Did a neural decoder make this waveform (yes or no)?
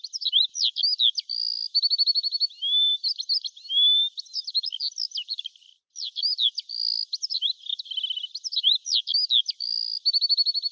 no